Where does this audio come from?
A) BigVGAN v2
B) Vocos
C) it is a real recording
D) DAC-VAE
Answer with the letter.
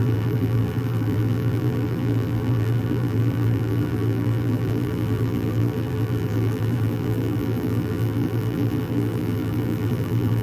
A